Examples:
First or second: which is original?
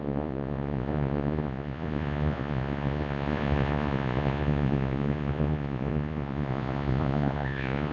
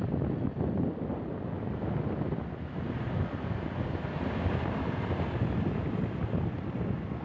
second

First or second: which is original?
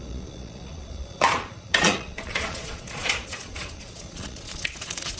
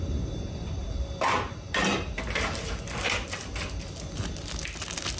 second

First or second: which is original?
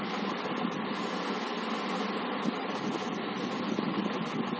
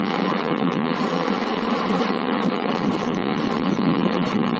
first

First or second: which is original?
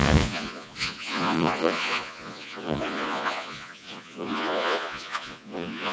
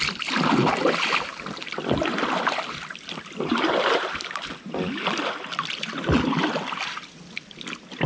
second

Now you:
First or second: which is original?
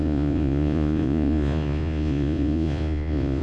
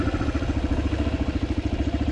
second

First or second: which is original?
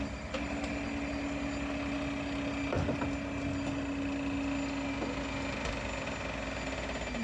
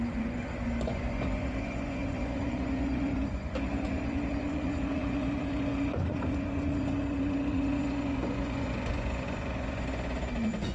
first